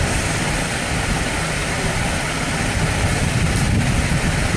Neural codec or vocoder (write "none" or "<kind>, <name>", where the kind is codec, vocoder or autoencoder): none